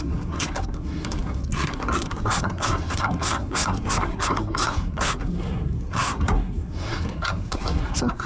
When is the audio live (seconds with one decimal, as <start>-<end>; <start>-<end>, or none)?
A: none